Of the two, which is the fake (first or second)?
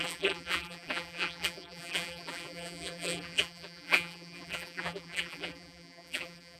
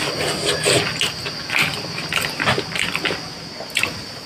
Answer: first